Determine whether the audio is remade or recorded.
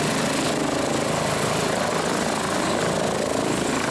recorded